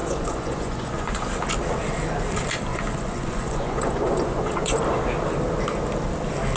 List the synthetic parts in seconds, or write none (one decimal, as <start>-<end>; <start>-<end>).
0.0-1.2; 2.7-4.8